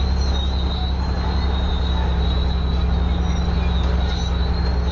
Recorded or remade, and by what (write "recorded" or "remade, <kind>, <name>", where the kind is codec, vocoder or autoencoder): recorded